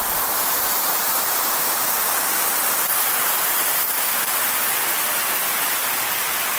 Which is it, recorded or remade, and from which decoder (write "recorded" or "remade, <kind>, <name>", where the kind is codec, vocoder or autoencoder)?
recorded